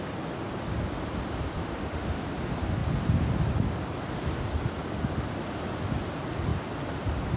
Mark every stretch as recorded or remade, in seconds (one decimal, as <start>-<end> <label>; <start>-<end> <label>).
0.0-1.6 recorded; 1.6-2.2 remade; 2.2-7.4 recorded